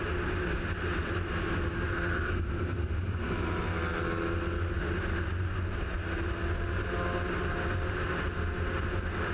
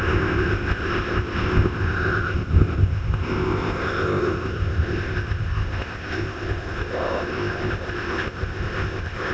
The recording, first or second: first